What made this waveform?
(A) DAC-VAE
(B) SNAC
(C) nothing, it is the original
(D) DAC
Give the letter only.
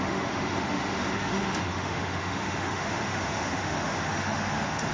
A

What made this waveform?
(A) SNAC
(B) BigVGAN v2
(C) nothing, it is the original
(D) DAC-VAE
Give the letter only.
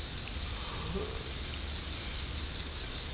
C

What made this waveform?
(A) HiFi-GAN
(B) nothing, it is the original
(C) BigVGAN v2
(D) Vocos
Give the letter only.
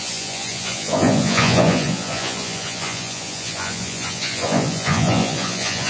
D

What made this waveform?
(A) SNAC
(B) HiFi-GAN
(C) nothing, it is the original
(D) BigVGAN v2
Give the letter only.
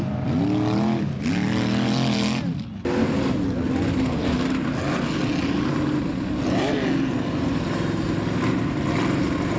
C